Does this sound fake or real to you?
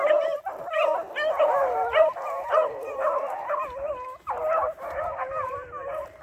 real